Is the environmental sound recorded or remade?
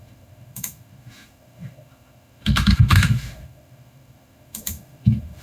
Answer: remade